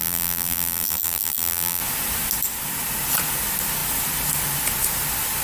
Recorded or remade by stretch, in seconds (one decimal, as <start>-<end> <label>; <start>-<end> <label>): 0.0-1.8 remade; 1.8-5.4 recorded